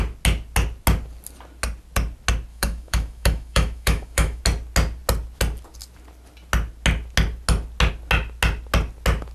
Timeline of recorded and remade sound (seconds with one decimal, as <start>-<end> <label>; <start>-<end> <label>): 0.0-2.5 recorded; 2.5-4.4 remade; 4.4-9.3 recorded